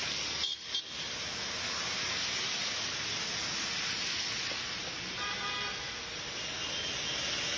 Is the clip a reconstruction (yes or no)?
no